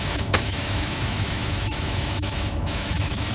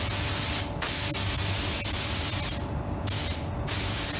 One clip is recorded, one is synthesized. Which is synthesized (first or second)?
first